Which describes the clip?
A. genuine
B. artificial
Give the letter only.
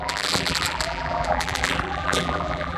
B